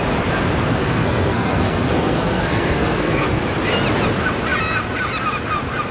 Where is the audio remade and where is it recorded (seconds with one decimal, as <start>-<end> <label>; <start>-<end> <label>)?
0.0-0.8 recorded; 0.8-3.3 remade; 3.3-5.9 recorded